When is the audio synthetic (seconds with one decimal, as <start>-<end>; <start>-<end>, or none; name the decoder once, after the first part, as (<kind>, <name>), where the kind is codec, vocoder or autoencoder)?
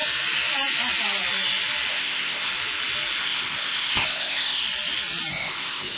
1.9-2.5 (codec, ZipCodec); 3.2-4.6; 5.3-6.0